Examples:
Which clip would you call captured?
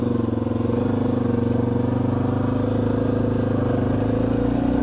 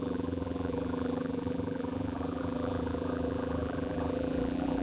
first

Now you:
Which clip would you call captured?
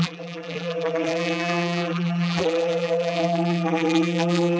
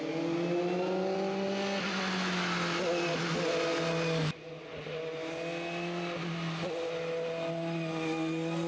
second